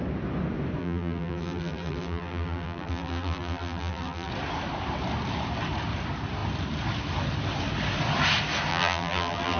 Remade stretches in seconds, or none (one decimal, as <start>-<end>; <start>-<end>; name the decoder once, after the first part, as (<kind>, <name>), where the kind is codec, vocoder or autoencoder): 0.8-4.3 (vocoder, BigVGAN v2); 8.7-9.6

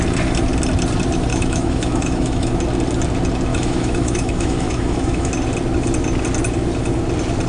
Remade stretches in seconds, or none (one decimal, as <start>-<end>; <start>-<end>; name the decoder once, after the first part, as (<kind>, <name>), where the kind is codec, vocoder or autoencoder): 1.3-2.5 (autoencoder, DAC-VAE); 3.5-5.3

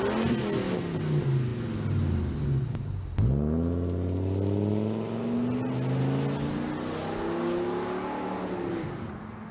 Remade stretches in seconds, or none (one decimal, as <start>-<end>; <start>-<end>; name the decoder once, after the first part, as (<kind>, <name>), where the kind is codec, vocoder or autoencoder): none

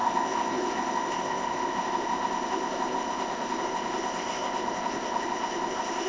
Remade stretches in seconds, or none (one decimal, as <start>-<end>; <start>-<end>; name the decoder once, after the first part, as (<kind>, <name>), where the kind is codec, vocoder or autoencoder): 0.0-6.1 (codec, ZipCodec)

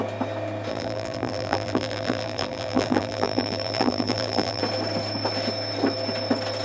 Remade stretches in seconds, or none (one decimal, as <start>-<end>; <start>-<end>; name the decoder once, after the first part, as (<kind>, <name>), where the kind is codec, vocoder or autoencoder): 0.7-4.6 (vocoder, BigVGAN v2)

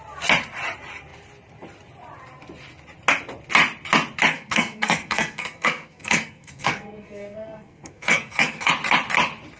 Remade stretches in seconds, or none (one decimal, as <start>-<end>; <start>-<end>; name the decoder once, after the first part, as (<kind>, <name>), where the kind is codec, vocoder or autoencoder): 4.3-8.7 (codec, SNAC)

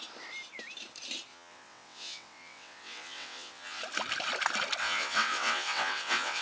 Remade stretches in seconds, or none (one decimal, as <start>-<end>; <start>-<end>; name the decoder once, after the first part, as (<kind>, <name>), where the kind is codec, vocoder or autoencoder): 1.3-3.8 (vocoder, WaveNeXt); 4.8-6.4